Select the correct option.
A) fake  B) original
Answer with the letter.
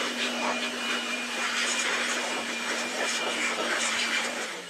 A